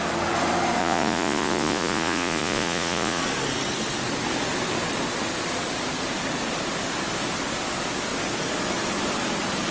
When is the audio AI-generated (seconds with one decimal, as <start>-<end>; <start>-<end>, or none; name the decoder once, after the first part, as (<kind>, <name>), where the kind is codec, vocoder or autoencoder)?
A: 0.8-3.2 (vocoder, Vocos)